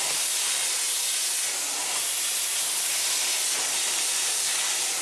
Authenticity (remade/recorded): recorded